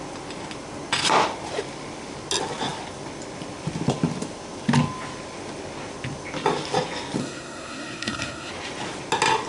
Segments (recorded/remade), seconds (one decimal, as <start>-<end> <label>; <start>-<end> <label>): 0.0-7.2 recorded; 7.2-8.5 remade; 8.5-9.5 recorded